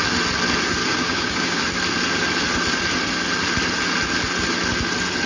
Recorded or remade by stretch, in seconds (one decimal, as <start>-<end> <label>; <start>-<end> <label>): 0.0-0.8 recorded; 0.8-1.6 remade; 1.6-5.3 recorded